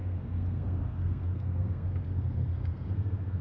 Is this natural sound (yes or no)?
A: no